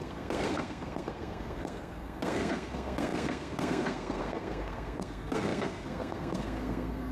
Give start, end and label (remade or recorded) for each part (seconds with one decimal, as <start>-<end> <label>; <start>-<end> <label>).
0.0-7.1 remade